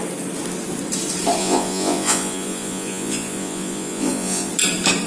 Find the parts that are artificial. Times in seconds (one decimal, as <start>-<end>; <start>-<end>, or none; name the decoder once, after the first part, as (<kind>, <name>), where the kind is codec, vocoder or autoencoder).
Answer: 1.4-4.5 (vocoder, Vocos)